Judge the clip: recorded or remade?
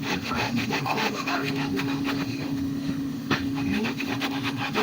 remade